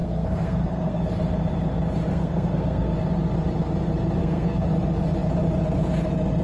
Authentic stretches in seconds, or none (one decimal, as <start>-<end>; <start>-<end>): 1.0-2.1; 3.0-4.2; 4.7-6.4